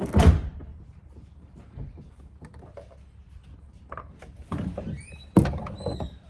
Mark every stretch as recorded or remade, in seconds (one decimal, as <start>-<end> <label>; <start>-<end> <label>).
0.0-0.7 recorded; 0.7-2.7 remade; 2.7-3.5 recorded; 3.5-5.6 remade; 5.6-6.3 recorded

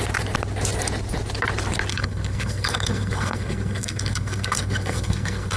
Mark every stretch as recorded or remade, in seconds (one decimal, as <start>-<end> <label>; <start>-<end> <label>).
0.0-1.9 recorded; 1.9-5.6 remade

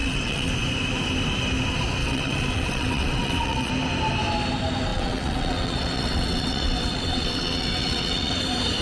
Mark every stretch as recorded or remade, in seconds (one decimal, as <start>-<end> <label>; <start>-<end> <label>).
0.0-0.5 remade; 0.5-2.0 recorded; 2.0-3.7 remade; 3.7-4.9 recorded; 4.9-8.4 remade; 8.4-8.8 recorded

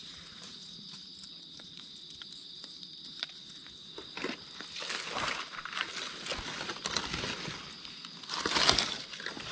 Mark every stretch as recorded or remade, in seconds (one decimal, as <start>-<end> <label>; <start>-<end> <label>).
0.0-1.9 remade; 1.9-9.5 recorded